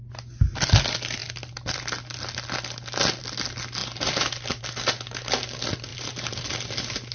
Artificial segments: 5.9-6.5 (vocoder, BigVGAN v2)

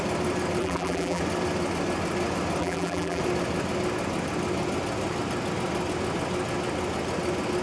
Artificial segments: 0.6-1.2 (vocoder, BigVGAN v2); 2.6-3.2

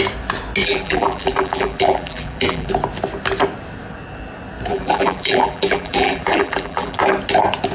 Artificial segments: 0.6-2.7 (vocoder, BigVGAN v2); 4.7-7.0

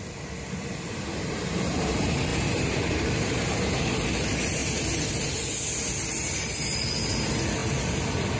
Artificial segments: 2.3-3.7 (vocoder, BigVGAN v2); 4.6-5.1; 7.6-8.4

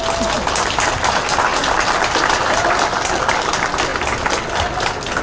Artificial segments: 1.5-3.5 (vocoder, BigVGAN v2)